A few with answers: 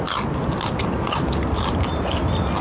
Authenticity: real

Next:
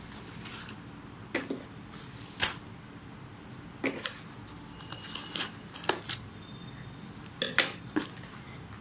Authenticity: real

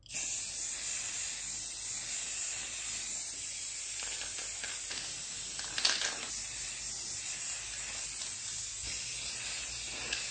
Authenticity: real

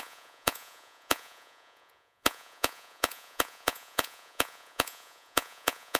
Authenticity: fake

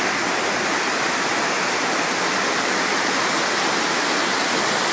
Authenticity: real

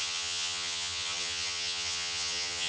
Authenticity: fake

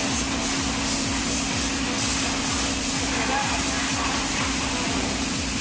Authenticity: real